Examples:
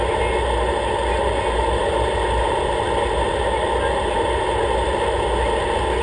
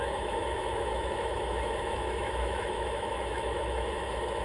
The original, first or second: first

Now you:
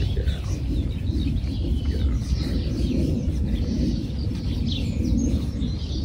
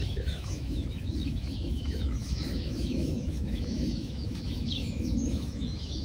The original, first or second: first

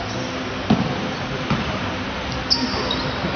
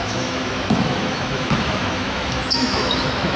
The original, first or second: first